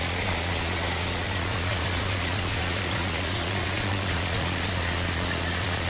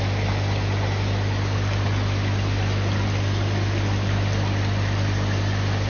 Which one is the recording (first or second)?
second